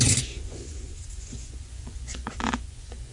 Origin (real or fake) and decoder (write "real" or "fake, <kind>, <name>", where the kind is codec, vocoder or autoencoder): fake, vocoder, Vocos